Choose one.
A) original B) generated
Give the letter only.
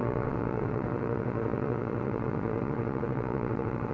B